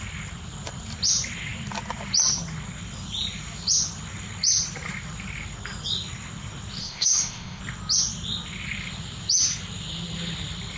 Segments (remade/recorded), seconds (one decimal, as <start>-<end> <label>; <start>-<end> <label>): 0.0-6.8 recorded; 6.8-7.6 remade; 7.6-10.8 recorded